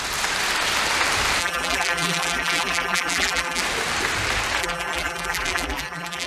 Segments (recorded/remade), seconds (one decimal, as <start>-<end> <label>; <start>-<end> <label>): 0.0-1.4 recorded; 1.4-3.6 remade; 3.6-4.6 recorded; 4.6-6.3 remade